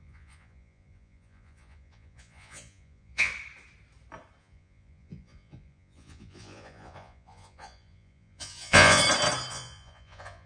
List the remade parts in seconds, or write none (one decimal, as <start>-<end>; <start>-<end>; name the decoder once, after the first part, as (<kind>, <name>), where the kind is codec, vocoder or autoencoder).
0.0-3.3 (vocoder, Vocos); 4.4-9.0; 9.5-10.5